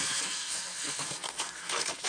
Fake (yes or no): yes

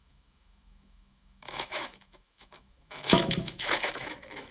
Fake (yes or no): yes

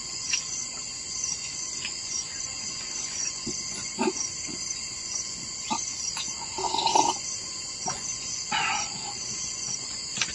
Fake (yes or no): yes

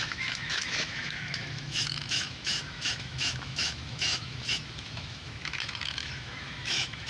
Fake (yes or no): yes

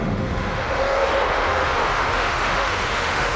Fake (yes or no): yes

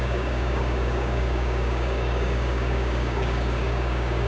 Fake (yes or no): yes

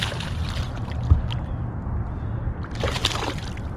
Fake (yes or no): no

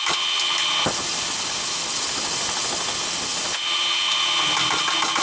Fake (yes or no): no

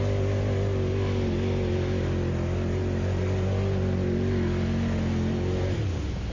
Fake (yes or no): no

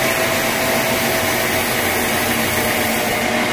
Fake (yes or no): no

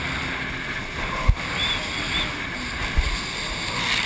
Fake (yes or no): no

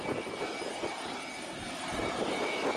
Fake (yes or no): yes